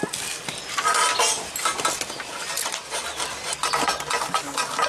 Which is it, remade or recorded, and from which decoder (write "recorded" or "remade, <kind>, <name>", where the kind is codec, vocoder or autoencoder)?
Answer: recorded